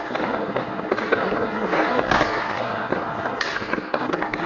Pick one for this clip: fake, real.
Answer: fake